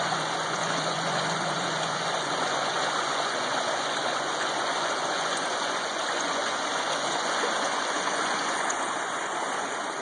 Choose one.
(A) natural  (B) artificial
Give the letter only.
B